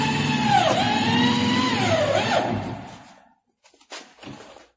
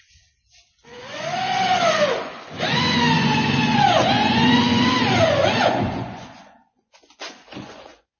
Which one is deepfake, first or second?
second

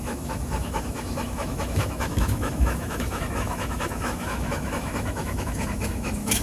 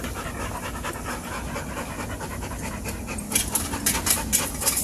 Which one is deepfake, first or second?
first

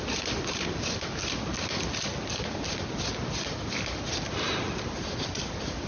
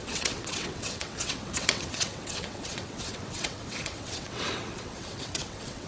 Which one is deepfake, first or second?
second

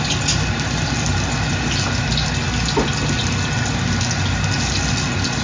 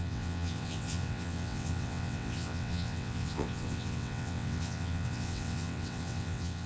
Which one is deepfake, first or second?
second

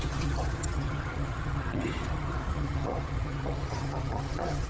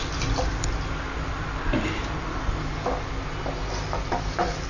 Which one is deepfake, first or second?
first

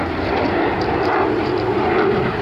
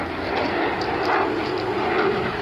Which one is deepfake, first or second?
first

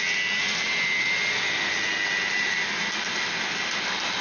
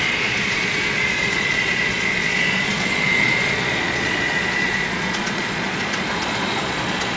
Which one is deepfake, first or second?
second